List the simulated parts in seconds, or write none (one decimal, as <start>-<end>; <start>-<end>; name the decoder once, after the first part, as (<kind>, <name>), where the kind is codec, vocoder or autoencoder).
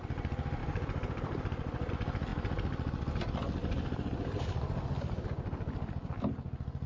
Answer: 0.6-1.9 (vocoder, BigVGAN v2); 3.6-5.2